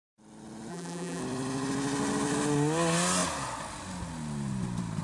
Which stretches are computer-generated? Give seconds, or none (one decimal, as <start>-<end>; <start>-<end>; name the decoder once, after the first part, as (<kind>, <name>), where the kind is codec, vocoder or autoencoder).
0.7-1.2 (vocoder, BigVGAN v2)